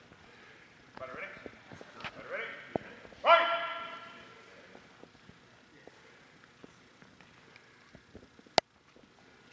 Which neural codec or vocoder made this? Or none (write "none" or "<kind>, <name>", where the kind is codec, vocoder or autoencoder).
none